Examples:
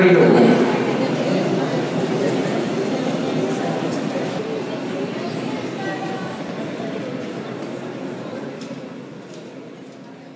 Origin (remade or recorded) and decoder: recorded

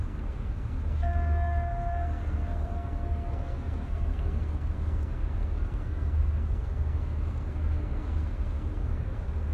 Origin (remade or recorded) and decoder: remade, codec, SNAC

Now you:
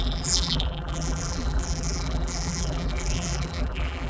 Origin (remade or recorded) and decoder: remade, vocoder, BigVGAN v2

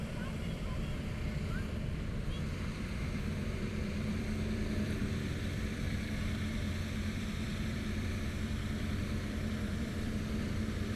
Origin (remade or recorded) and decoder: remade, vocoder, BigVGAN v2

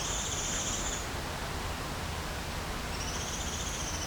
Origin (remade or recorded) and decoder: recorded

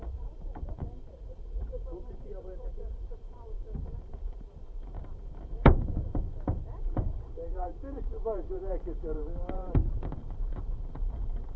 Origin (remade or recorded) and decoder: remade, vocoder, BigVGAN v2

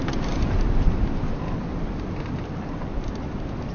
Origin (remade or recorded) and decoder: recorded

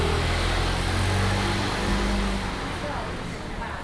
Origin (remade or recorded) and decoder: recorded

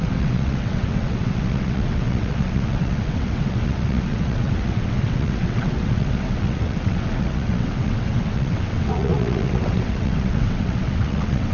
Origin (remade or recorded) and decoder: remade, vocoder, WaveNeXt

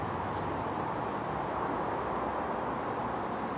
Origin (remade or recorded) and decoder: recorded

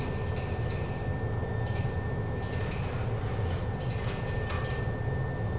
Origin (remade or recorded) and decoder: recorded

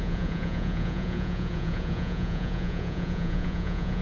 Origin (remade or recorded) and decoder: remade, vocoder, Vocos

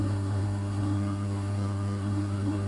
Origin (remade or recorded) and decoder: remade, codec, SNAC